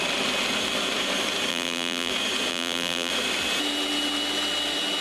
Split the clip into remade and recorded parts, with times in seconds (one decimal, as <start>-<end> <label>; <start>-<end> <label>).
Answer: 0.0-1.5 recorded; 1.5-2.1 remade; 2.1-2.5 recorded; 2.5-3.1 remade; 3.1-5.0 recorded